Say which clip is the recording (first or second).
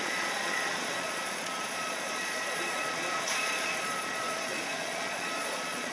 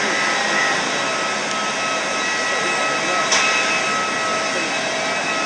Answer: second